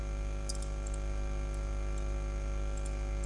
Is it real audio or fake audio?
real